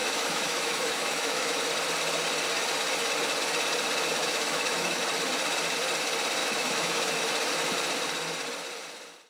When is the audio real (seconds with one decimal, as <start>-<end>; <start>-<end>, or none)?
1.6-4.2; 5.0-6.4; 7.1-9.3